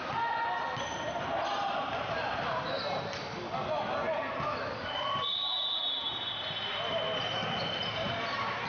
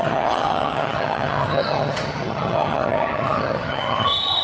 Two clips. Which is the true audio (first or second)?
first